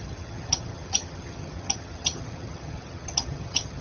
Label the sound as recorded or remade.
remade